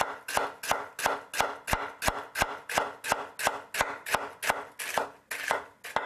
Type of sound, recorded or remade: recorded